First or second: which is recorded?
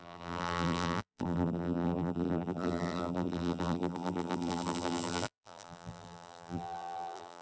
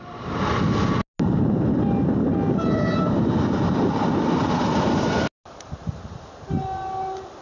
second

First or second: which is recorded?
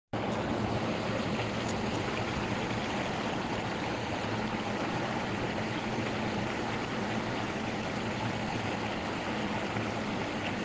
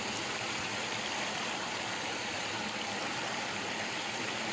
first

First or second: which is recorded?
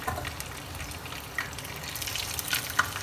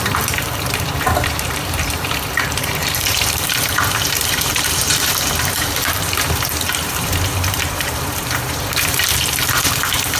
first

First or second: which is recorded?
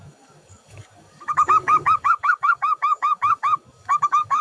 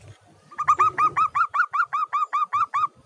second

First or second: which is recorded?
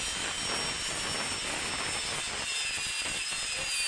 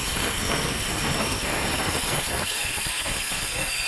first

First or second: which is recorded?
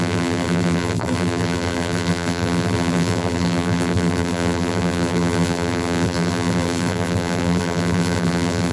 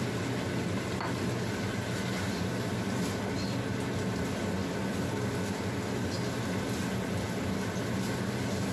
second